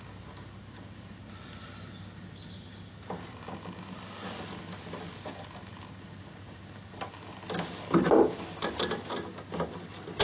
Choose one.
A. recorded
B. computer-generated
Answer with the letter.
A